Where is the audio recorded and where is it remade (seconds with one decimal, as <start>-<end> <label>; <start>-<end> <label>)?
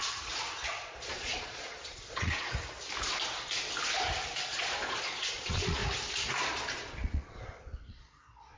0.0-0.7 recorded; 0.7-2.5 remade; 2.5-4.5 recorded; 4.5-5.8 remade; 5.8-6.5 recorded; 6.5-8.6 remade